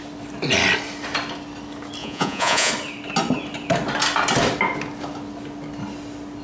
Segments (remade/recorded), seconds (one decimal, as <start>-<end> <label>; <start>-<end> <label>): 0.0-2.0 recorded; 2.0-2.7 remade; 2.7-6.4 recorded